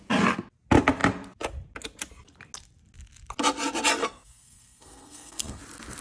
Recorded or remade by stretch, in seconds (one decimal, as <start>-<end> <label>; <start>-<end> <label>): 0.0-4.0 recorded; 4.0-5.6 remade; 5.6-6.0 recorded